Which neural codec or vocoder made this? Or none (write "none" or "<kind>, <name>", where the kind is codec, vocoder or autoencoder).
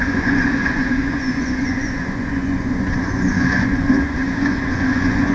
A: vocoder, Vocos